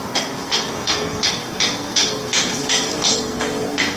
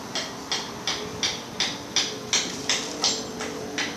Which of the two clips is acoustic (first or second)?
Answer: second